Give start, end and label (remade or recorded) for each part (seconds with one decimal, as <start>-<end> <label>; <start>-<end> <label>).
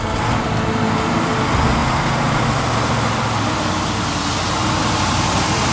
0.0-1.8 recorded; 1.8-2.4 remade; 2.4-4.8 recorded; 4.8-5.7 remade